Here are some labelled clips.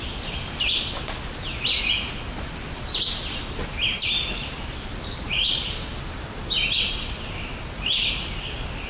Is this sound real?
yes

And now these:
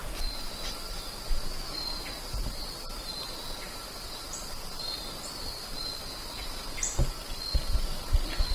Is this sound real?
yes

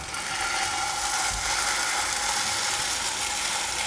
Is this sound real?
yes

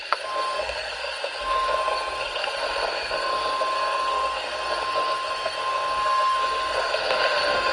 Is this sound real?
no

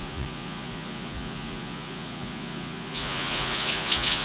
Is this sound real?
no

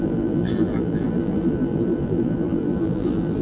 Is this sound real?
no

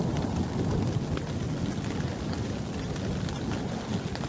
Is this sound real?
yes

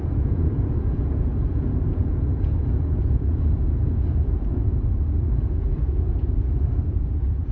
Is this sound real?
no